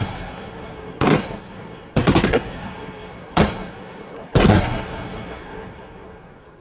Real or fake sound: fake